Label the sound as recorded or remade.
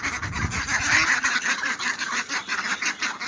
recorded